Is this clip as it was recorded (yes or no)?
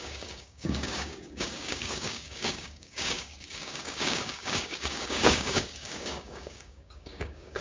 no